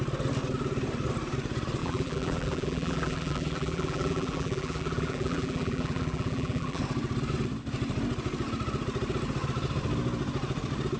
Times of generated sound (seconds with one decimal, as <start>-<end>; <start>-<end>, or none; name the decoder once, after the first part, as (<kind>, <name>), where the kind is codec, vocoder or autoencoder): 1.8-6.8 (vocoder, BigVGAN v2)